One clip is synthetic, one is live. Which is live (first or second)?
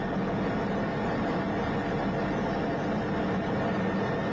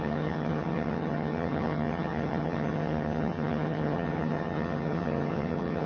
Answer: first